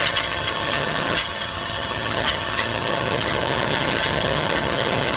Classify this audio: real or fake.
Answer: fake